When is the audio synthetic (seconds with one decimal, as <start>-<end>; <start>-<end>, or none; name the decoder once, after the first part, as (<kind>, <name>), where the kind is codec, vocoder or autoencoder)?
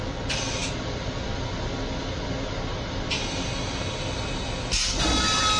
none